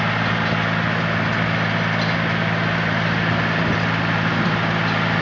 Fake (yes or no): no